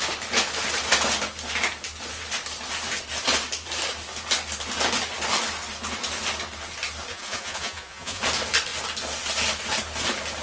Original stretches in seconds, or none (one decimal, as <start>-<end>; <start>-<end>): 0.0-7.1; 8.2-10.4